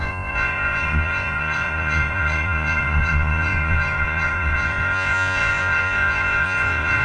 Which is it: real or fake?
fake